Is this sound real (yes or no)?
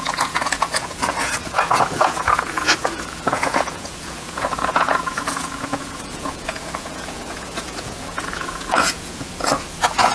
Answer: no